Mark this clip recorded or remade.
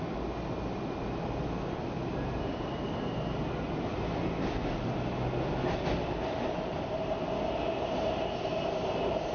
recorded